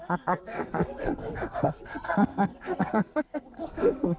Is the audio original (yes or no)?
no